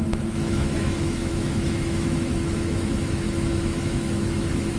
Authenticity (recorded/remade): remade